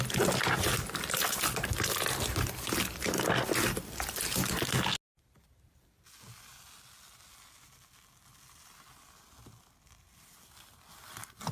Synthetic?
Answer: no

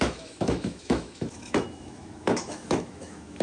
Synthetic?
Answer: yes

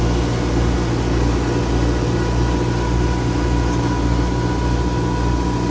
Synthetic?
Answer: no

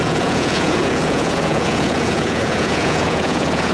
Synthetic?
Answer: yes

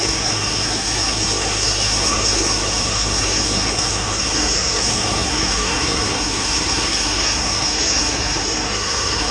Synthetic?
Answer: yes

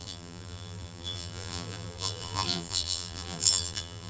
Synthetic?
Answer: yes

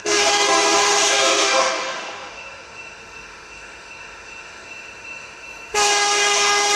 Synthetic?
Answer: yes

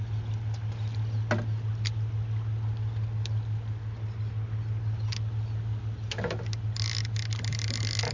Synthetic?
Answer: no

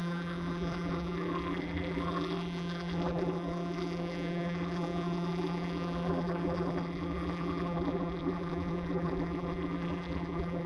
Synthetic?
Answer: yes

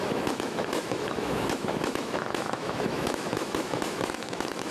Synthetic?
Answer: yes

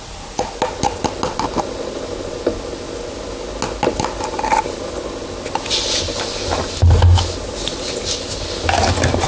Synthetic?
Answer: no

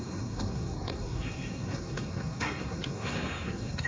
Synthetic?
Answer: yes